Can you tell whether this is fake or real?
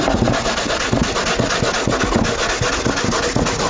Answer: real